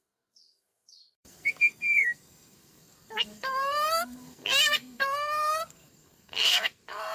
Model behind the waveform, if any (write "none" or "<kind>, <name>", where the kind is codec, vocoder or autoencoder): codec, SNAC